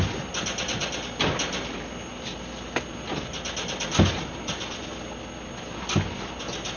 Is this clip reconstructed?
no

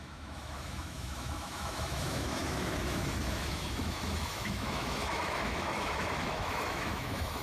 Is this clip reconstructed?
yes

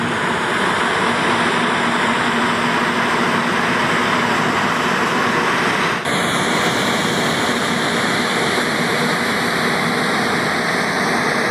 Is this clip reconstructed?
no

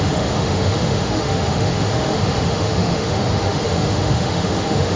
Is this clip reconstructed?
yes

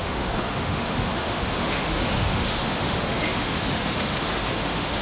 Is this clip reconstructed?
yes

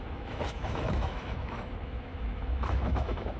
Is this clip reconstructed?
yes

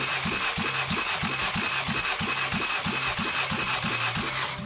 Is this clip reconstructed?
no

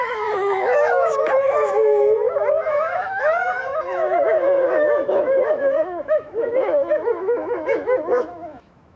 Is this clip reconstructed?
yes